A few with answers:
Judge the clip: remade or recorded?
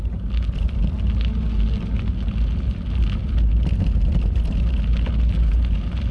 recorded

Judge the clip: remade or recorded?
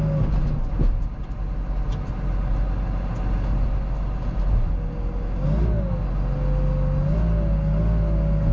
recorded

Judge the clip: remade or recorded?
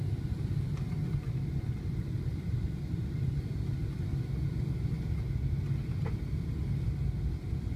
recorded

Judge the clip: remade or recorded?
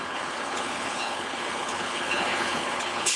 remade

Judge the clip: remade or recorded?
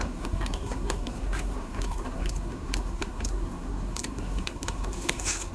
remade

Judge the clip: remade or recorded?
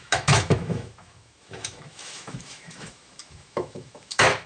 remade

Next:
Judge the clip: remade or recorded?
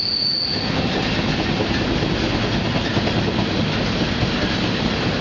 recorded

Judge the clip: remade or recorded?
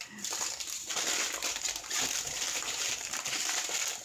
recorded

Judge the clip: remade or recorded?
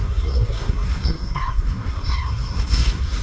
remade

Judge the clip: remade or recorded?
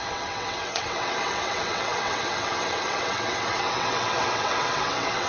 remade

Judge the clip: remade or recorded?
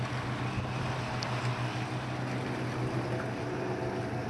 recorded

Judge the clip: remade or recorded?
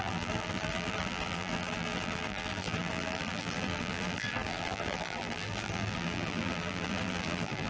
remade